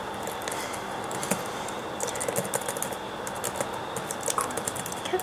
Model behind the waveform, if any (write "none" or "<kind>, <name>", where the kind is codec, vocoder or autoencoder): none